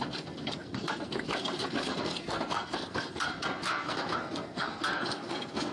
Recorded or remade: remade